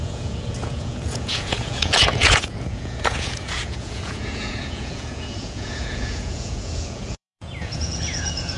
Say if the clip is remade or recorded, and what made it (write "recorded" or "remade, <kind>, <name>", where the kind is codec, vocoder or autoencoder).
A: remade, vocoder, Vocos